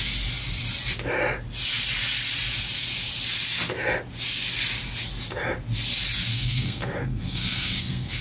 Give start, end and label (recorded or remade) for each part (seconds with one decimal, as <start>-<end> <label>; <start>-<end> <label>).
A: 0.0-6.3 recorded; 6.3-8.2 remade

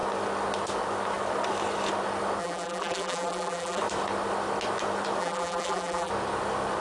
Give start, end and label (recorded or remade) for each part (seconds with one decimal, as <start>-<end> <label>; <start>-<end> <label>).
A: 0.0-2.4 recorded; 2.4-3.8 remade; 3.8-5.2 recorded; 5.2-6.1 remade; 6.1-6.8 recorded

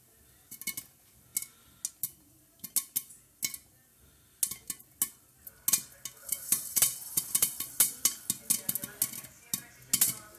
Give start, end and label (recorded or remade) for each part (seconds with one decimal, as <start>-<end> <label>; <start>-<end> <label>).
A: 0.0-10.4 recorded

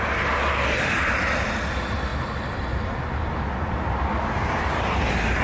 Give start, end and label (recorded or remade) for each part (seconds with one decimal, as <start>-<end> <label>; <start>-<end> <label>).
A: 0.0-5.4 recorded

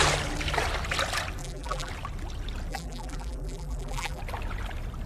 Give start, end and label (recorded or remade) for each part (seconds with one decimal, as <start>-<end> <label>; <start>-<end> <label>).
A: 0.0-1.4 recorded; 1.4-1.9 remade; 1.9-2.7 recorded; 2.7-4.2 remade; 4.2-5.1 recorded

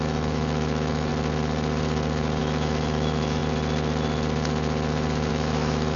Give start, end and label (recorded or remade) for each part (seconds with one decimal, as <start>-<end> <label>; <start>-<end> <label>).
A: 0.0-1.1 remade; 1.1-2.4 recorded; 2.4-3.4 remade; 3.4-5.3 recorded; 5.3-6.0 remade

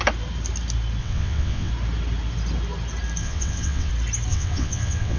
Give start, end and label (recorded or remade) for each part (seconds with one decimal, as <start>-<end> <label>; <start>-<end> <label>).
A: 0.0-1.0 recorded; 1.0-1.7 remade; 1.7-3.2 recorded; 3.2-3.9 remade; 3.9-4.3 recorded; 4.3-5.2 remade